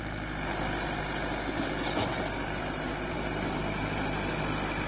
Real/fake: real